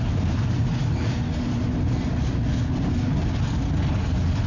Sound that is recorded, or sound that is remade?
recorded